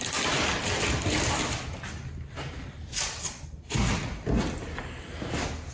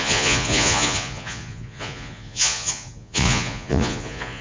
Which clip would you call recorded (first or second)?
first